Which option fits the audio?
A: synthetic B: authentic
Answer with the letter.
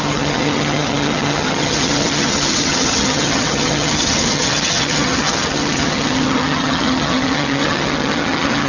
A